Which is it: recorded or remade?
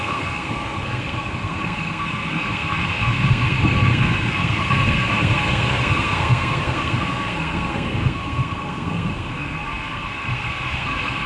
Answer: remade